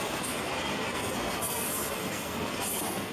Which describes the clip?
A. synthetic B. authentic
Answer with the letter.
A